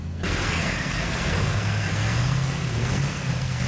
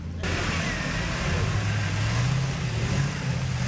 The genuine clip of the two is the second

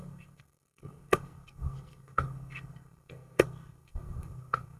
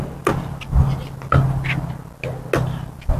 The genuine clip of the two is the second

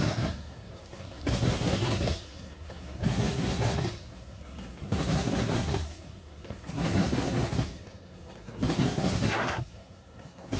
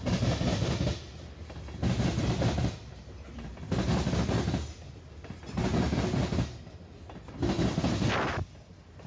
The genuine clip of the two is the second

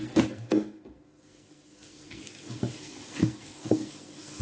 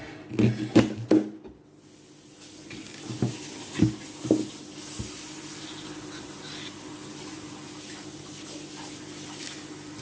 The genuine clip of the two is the second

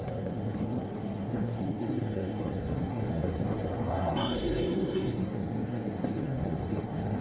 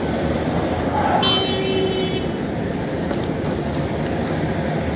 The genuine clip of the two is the second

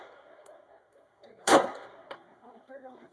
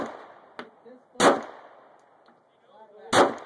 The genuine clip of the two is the second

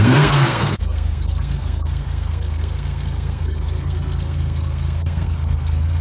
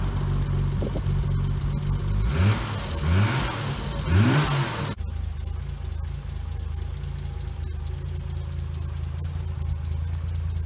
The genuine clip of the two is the second